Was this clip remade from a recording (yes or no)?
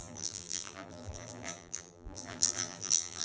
yes